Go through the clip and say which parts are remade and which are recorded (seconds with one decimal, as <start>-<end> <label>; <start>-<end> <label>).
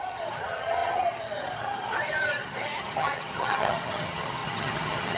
0.0-5.2 remade